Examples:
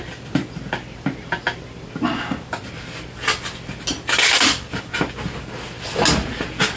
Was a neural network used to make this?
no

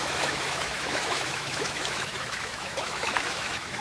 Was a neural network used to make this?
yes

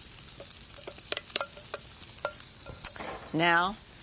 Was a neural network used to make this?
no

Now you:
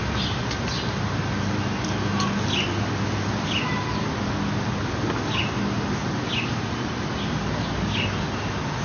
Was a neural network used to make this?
no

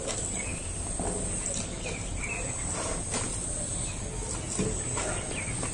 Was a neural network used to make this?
no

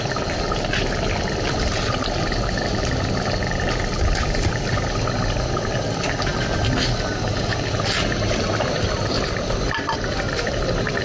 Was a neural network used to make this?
no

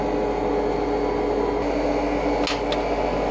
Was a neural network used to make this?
no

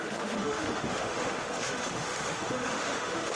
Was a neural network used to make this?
yes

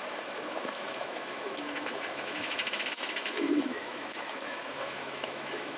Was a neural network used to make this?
yes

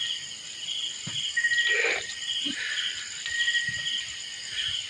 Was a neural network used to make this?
no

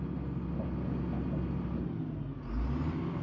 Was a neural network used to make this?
no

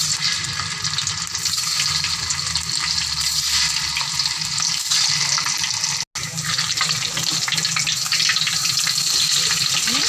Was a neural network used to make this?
no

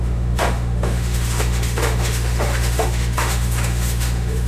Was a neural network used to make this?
yes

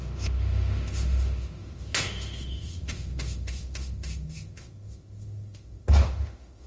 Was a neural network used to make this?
yes